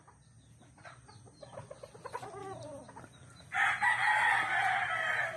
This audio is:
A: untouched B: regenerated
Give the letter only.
A